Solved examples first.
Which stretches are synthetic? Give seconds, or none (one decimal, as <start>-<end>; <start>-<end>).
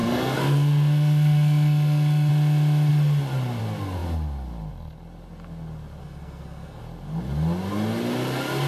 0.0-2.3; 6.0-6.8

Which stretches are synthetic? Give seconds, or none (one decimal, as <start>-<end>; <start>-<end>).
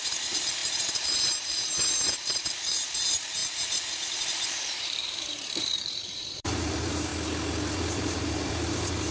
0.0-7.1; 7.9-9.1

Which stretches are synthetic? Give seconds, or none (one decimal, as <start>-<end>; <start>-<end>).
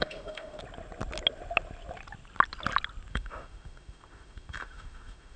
0.0-0.6; 3.1-5.4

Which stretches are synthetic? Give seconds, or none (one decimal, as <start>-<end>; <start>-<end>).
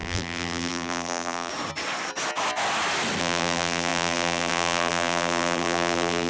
0.0-1.5; 3.2-6.3